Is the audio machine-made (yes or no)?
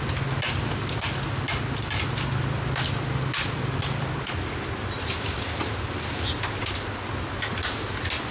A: no